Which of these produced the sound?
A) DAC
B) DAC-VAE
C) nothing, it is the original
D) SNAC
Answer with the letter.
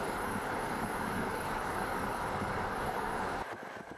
A